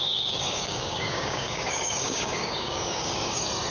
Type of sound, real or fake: fake